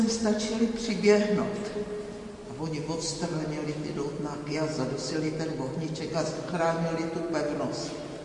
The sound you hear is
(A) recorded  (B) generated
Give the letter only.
A